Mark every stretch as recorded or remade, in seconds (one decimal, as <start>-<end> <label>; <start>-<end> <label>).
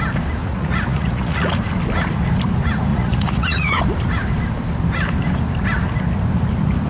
0.0-0.4 recorded; 0.4-1.6 remade; 1.6-2.9 recorded; 2.9-3.8 remade; 3.8-6.9 recorded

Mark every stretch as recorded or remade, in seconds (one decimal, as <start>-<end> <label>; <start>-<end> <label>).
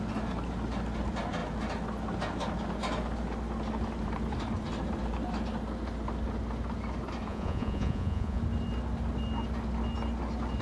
0.0-7.3 recorded; 7.3-8.4 remade; 8.4-10.6 recorded